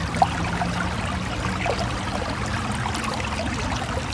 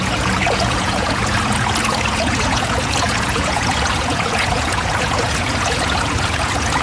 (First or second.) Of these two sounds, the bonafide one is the first